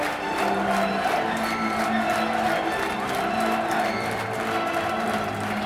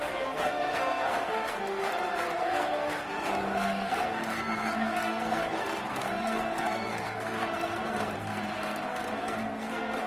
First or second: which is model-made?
second